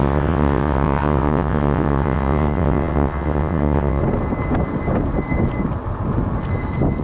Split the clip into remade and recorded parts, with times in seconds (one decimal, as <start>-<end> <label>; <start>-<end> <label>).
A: 0.0-4.0 remade; 4.0-7.0 recorded